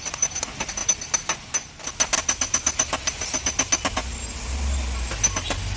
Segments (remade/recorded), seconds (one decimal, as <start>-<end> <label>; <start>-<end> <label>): 0.0-5.8 recorded